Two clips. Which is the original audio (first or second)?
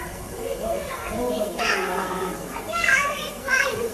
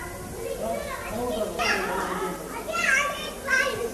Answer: second